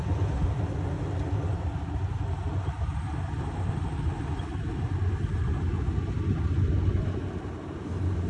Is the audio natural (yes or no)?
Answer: yes